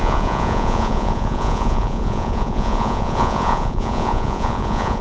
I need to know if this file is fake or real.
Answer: fake